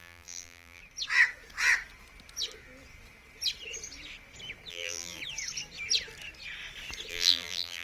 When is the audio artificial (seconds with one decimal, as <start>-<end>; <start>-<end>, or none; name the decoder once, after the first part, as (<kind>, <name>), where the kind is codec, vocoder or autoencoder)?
0.0-0.8 (vocoder, BigVGAN v2); 4.7-5.2; 7.1-7.8